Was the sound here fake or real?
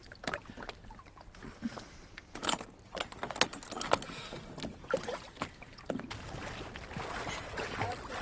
real